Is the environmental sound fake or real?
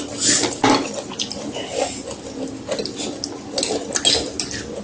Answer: real